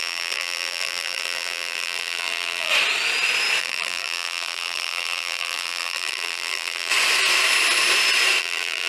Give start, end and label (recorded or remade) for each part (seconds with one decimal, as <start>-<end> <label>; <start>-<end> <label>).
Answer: 0.0-2.7 remade; 2.7-3.6 recorded; 3.6-6.9 remade; 6.9-8.4 recorded; 8.4-8.9 remade